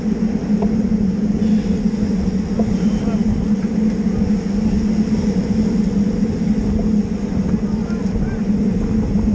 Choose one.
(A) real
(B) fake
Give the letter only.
A